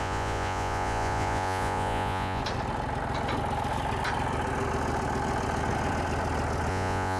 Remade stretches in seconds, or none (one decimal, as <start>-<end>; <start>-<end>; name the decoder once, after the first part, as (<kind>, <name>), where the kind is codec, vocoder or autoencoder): 0.0-2.4 (vocoder, Vocos); 6.7-7.2